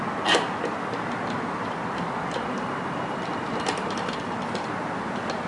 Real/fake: real